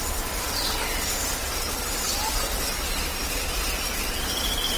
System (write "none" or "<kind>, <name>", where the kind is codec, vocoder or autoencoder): none